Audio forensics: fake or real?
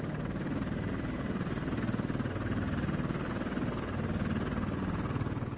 real